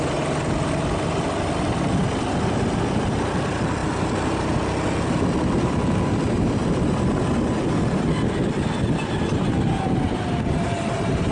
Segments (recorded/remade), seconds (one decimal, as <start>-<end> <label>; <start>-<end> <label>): 0.0-11.3 recorded